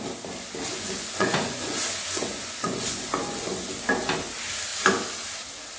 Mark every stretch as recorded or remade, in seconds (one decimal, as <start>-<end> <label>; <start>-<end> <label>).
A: 0.0-0.7 recorded; 0.7-3.6 remade; 3.6-5.8 recorded